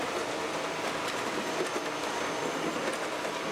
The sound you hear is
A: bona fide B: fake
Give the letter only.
A